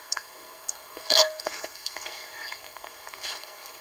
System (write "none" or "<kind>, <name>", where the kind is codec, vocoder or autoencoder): codec, SNAC